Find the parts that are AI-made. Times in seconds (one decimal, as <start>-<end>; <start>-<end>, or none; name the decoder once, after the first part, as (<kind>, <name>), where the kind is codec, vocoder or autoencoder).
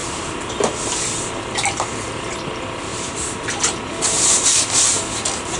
0.0-0.5 (vocoder, BigVGAN v2); 2.9-3.5